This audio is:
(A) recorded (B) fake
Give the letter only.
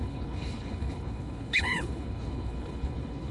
B